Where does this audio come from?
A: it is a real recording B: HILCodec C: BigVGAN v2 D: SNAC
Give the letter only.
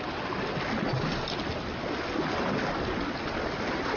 A